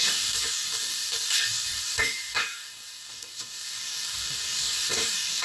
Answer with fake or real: fake